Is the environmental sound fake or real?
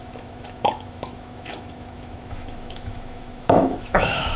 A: fake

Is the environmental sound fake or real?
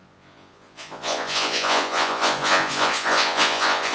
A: fake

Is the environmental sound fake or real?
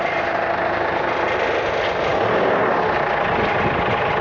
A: real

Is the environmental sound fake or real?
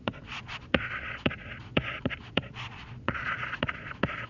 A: fake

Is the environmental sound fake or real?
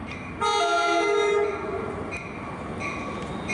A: real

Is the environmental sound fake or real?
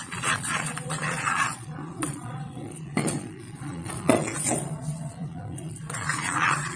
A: fake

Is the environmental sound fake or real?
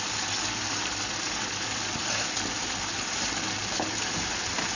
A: real